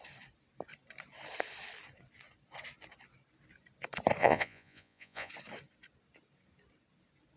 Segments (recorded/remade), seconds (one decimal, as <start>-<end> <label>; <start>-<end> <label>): 0.0-4.2 recorded; 4.2-5.3 remade; 5.3-7.4 recorded